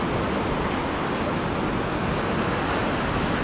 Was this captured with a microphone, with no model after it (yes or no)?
yes